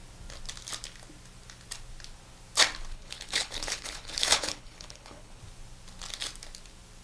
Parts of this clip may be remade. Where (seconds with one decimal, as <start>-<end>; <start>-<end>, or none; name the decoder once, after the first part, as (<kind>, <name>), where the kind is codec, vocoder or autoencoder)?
2.9-5.4 (codec, HILCodec)